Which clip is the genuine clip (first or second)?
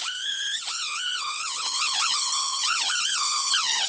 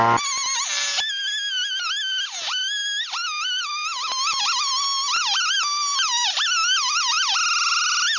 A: second